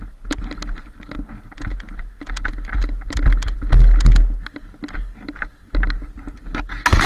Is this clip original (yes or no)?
yes